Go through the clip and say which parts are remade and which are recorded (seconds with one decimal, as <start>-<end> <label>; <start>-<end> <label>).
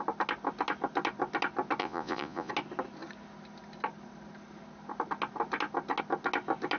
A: 0.0-1.8 recorded; 1.8-2.5 remade; 2.5-6.8 recorded